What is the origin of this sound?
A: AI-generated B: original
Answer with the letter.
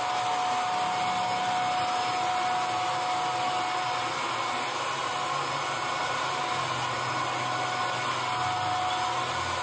B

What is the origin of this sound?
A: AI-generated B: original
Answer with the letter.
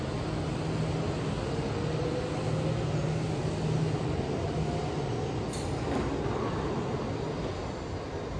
B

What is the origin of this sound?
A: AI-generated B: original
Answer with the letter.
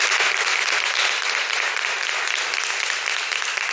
B